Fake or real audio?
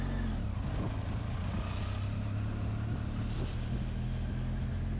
real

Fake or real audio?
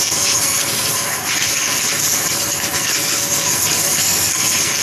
fake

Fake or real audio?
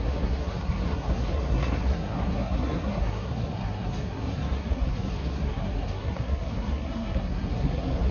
fake